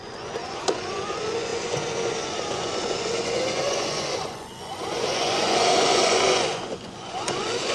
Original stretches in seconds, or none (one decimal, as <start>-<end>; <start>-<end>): none